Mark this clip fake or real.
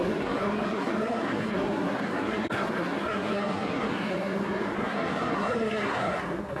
fake